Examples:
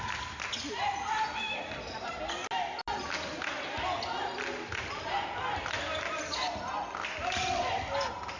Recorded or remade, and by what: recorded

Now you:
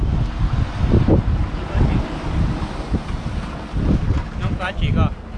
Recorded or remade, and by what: recorded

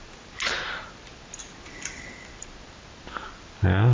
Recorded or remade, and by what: recorded